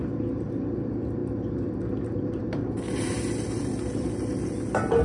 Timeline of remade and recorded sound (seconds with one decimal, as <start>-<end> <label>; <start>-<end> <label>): 0.0-5.0 recorded